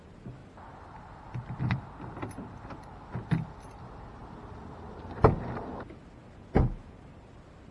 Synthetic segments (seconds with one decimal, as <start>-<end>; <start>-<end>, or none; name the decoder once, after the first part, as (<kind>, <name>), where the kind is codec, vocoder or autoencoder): none